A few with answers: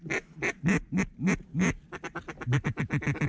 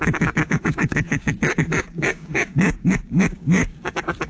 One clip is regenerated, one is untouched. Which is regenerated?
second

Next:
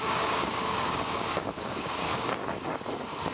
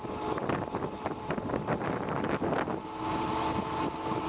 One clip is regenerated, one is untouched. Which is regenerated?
first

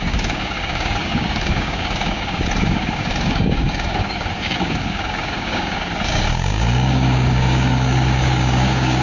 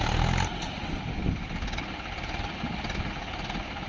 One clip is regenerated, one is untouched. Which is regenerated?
first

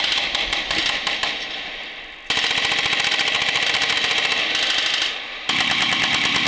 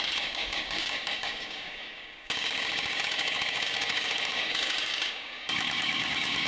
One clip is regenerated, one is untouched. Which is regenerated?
second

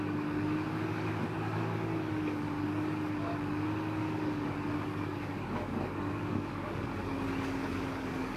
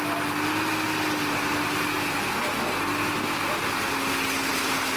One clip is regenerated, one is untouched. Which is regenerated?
first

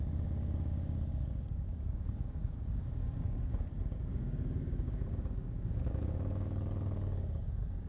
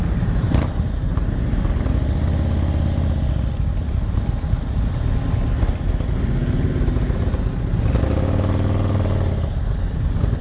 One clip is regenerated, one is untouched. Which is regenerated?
first